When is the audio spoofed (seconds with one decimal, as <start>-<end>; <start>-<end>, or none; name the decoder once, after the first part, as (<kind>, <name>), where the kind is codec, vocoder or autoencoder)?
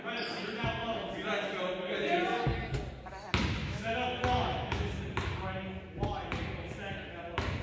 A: 3.6-4.8 (autoencoder, DAC-VAE)